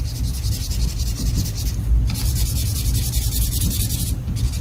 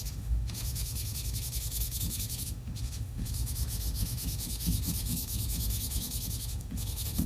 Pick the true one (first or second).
first